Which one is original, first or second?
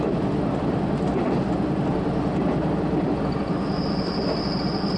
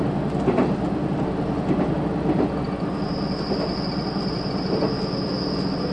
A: second